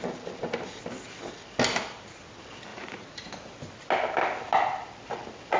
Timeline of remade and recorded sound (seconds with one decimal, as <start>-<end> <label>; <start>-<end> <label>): 0.0-2.7 recorded; 2.7-3.3 remade; 3.3-5.6 recorded